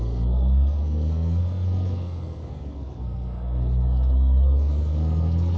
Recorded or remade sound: remade